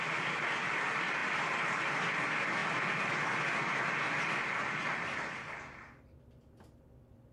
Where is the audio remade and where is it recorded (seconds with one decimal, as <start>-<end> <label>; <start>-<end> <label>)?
0.0-7.3 recorded